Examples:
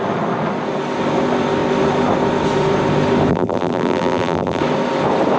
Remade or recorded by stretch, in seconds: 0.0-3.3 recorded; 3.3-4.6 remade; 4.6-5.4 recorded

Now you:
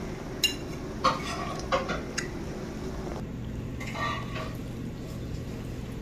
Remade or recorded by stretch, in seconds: 0.0-6.0 recorded

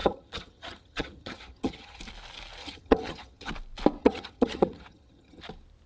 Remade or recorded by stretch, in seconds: 0.0-2.0 remade; 2.0-2.6 recorded; 2.6-3.5 remade; 3.5-4.0 recorded; 4.0-5.4 remade; 5.4-5.9 recorded

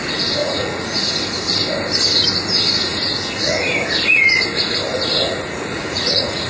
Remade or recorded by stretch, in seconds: 0.0-0.4 recorded; 0.4-1.1 remade; 1.1-2.9 recorded; 2.9-3.7 remade; 3.7-4.9 recorded; 4.9-6.5 remade

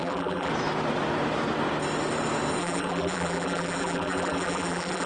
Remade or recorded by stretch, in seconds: 0.0-0.5 remade; 0.5-2.6 recorded; 2.6-5.1 remade

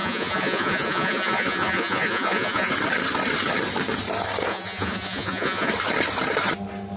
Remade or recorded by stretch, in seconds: 0.0-2.7 remade; 2.7-4.5 recorded; 4.5-5.7 remade; 5.7-7.0 recorded

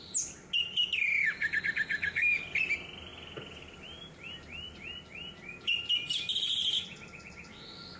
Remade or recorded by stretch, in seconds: 0.0-8.0 recorded

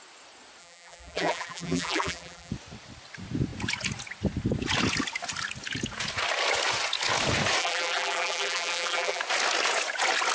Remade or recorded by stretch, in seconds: 0.0-0.6 recorded; 0.6-2.5 remade; 2.5-7.6 recorded; 7.6-9.2 remade; 9.2-10.3 recorded